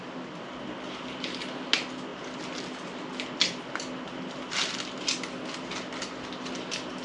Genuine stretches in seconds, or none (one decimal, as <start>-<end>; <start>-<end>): 0.0-7.0

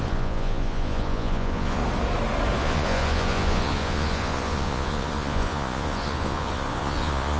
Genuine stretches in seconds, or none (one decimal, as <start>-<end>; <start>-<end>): 1.8-2.6

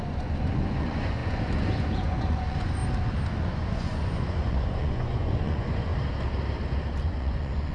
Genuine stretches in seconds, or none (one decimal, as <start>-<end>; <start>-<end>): 2.8-3.4; 5.9-7.0

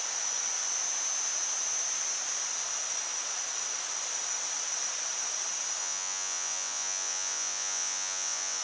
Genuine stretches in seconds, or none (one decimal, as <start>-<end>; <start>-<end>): 0.0-5.8

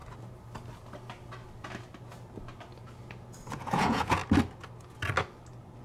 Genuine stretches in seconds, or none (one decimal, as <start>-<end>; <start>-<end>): 0.0-3.5; 4.2-5.8

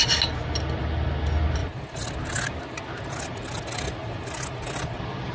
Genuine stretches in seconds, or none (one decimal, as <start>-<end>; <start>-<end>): 0.0-5.3

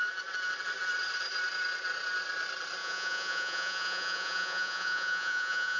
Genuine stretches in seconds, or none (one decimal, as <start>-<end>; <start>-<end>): 0.0-2.8

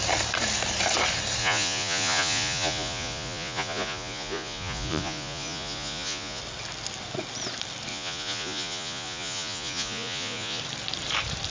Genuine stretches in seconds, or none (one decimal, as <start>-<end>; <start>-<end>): 0.0-1.4; 6.4-7.9; 10.6-11.5